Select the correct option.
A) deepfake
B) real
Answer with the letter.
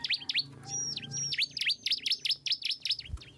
B